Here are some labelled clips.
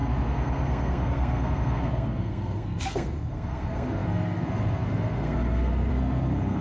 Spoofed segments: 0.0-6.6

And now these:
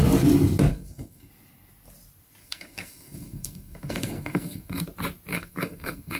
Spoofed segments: 0.7-1.3; 2.4-4.8; 5.3-6.2

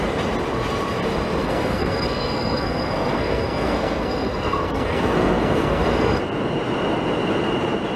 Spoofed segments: 1.4-6.2

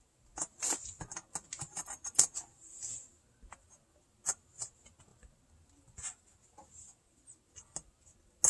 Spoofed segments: none

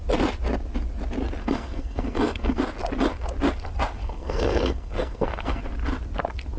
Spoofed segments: 1.4-2.6; 4.0-5.6

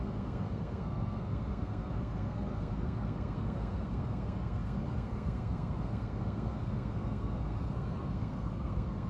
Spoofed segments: 0.0-9.1

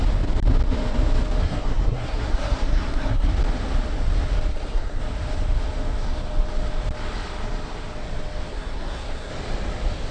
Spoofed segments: 1.4-3.3; 4.5-5.0; 8.5-9.3

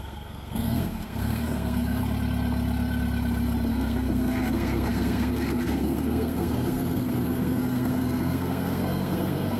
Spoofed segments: 0.0-2.0; 3.7-9.6